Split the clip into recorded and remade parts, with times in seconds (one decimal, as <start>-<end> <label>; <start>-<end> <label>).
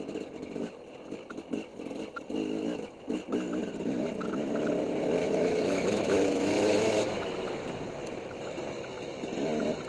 0.0-5.2 recorded; 5.2-7.5 remade; 7.5-9.9 recorded